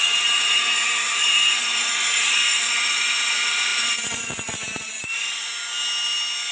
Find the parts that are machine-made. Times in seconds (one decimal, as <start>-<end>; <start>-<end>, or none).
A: 0.0-5.5